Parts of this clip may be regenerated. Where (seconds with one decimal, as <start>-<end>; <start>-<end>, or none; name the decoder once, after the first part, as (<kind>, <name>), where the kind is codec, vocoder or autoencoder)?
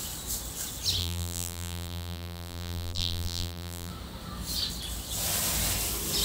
1.0-3.9 (vocoder, BigVGAN v2)